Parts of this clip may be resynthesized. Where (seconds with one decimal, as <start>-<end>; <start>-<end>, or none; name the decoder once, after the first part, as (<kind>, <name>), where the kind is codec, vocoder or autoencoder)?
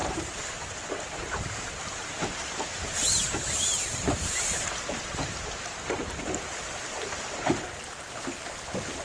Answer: 0.0-1.9 (vocoder, BigVGAN v2)